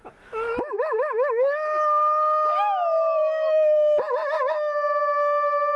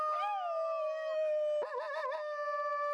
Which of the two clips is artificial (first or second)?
first